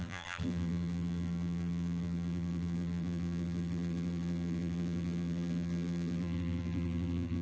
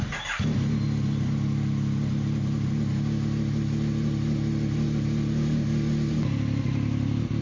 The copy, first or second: first